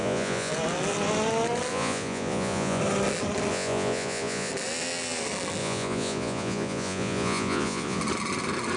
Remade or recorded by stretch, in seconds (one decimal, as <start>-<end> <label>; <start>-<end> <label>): 0.0-0.5 remade; 0.5-1.7 recorded; 1.7-2.8 remade; 2.8-3.5 recorded; 3.5-4.5 remade; 4.5-5.6 recorded; 5.6-8.0 remade; 8.0-8.8 recorded